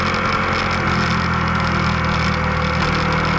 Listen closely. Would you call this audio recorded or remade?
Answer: recorded